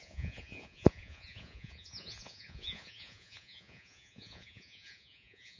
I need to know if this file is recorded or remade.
remade